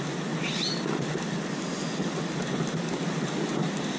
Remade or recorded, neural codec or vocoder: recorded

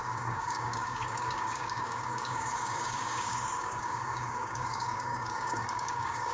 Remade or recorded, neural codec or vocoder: remade, codec, DAC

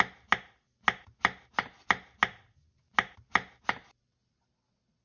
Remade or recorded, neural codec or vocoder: recorded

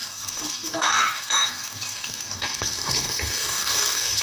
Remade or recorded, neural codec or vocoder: remade, codec, DAC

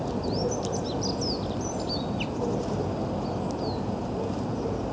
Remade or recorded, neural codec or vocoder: recorded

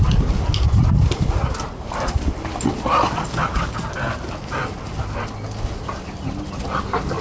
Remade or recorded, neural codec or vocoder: recorded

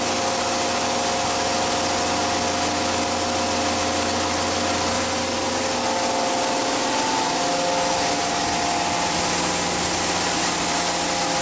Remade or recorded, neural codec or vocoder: recorded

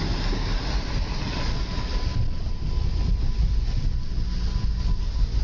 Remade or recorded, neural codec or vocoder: recorded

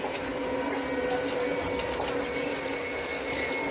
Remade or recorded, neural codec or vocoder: recorded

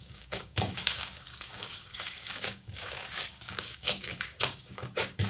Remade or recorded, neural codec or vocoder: remade, codec, DAC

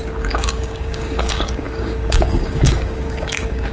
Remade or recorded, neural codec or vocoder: remade, codec, DAC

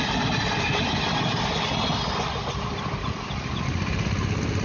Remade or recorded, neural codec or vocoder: recorded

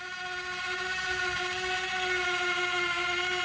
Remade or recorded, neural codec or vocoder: recorded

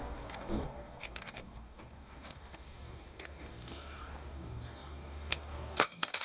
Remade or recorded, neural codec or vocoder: remade, codec, DAC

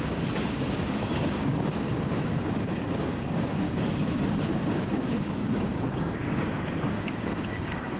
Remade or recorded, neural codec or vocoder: remade, codec, DAC